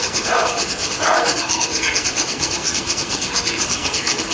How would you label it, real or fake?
fake